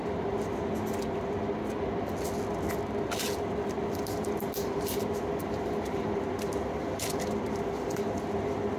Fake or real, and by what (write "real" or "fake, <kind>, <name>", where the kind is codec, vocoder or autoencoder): real